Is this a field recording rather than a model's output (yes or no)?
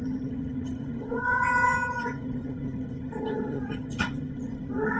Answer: no